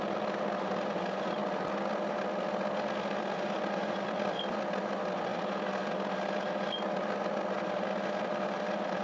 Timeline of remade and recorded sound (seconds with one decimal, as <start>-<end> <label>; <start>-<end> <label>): 0.0-1.4 remade; 1.4-3.9 recorded; 3.9-5.3 remade; 5.3-7.2 recorded; 7.2-9.0 remade